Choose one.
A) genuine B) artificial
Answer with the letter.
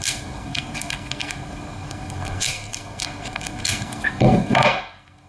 B